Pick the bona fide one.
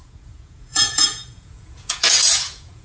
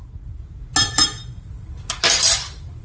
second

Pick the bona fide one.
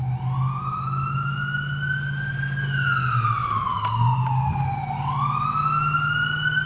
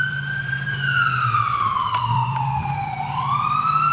first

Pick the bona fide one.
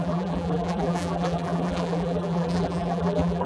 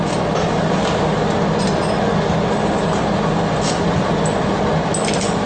second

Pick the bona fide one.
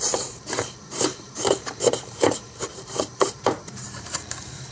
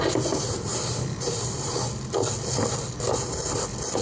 second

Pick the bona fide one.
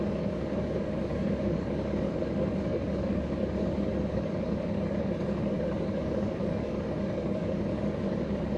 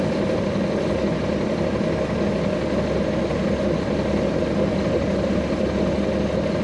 second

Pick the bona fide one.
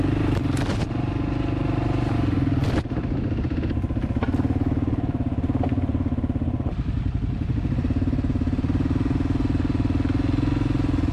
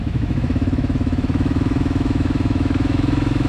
first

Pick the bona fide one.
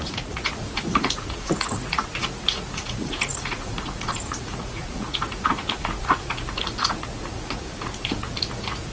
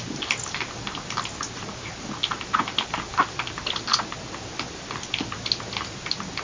second